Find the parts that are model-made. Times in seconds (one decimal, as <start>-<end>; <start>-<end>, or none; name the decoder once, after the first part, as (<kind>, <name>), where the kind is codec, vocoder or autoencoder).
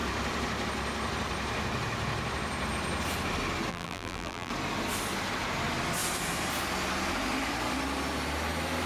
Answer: 3.7-4.5 (vocoder, BigVGAN v2)